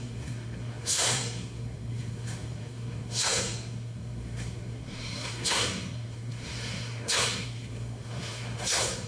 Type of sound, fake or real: fake